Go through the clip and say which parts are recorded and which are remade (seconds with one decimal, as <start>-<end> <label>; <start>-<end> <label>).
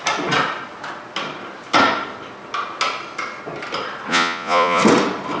0.0-4.1 recorded; 4.1-4.8 remade; 4.8-5.4 recorded